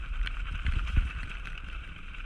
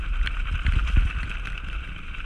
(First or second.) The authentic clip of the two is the second